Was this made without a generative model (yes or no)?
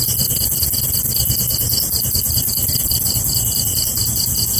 yes